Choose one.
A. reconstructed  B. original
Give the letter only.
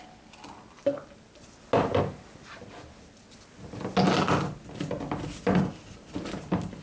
B